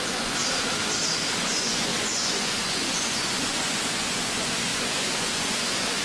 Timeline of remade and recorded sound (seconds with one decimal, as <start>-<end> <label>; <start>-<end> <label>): 0.0-0.4 remade; 0.4-1.4 recorded; 1.4-6.0 remade